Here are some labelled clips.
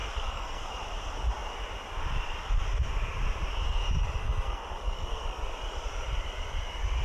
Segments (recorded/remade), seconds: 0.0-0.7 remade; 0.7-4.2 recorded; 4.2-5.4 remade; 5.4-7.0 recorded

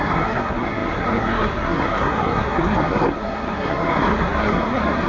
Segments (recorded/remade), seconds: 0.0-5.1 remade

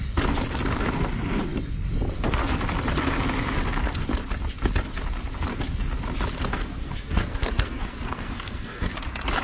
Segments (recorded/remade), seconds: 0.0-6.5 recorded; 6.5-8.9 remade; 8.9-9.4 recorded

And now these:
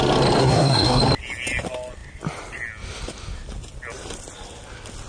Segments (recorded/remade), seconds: 0.0-0.4 recorded; 0.4-1.0 remade; 1.0-5.1 recorded